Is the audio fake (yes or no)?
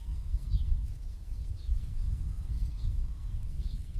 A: yes